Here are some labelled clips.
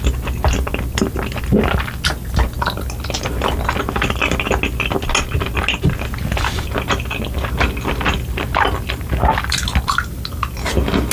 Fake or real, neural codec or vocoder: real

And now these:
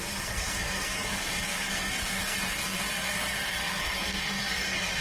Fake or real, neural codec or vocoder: fake, codec, SNAC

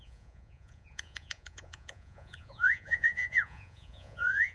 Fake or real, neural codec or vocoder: fake, vocoder, Vocos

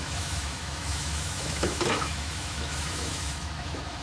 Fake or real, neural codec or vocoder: fake, autoencoder, DAC-VAE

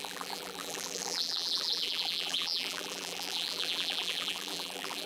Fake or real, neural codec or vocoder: fake, vocoder, BigVGAN v2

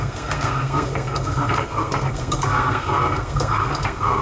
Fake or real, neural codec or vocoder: fake, codec, SNAC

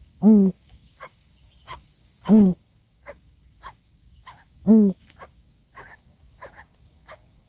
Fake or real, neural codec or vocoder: fake, codec, DAC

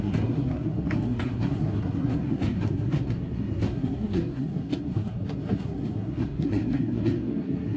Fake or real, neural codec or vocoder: fake, codec, SNAC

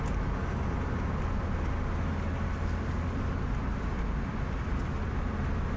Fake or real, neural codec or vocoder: real